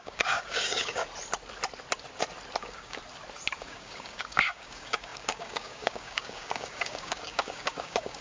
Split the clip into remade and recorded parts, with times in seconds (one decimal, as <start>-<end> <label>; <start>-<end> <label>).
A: 0.0-1.0 remade; 1.0-2.6 recorded; 2.6-3.0 remade; 3.0-3.6 recorded; 3.6-8.2 remade